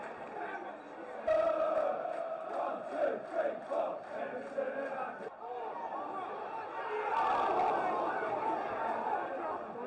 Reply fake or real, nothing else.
real